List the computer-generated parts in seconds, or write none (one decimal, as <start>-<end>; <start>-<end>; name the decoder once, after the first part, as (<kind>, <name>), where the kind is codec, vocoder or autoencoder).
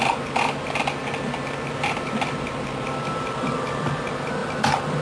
none